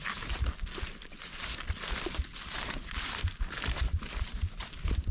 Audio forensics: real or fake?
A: real